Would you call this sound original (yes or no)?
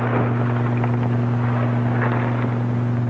yes